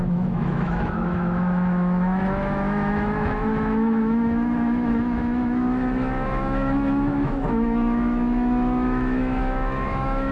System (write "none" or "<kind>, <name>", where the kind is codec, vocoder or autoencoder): autoencoder, DAC-VAE